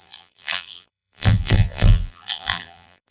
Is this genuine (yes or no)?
no